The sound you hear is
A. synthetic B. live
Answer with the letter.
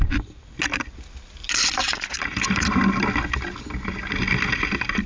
B